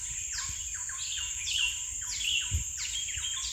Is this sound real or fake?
real